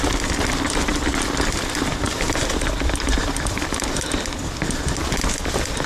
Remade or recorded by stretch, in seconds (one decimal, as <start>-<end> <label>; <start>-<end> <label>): 0.0-0.9 recorded; 0.9-3.2 remade; 3.2-5.9 recorded